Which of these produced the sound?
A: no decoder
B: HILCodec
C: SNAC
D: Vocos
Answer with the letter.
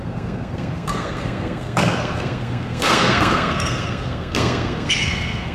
C